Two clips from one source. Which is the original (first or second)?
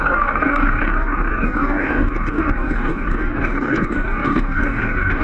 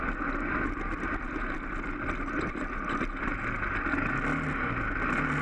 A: second